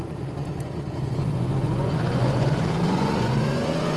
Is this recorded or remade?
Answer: remade